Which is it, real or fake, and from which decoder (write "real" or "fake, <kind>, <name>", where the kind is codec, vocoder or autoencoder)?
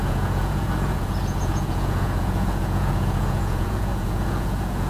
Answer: fake, vocoder, Vocos